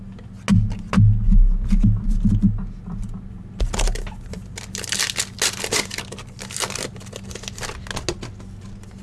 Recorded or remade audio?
recorded